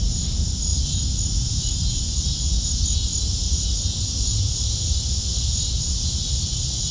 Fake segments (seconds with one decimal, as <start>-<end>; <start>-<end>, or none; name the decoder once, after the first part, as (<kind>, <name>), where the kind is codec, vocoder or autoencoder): 4.3-5.0 (vocoder, BigVGAN v2)